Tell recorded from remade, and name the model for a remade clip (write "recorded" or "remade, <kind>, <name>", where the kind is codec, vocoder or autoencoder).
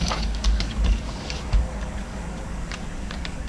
remade, codec, DAC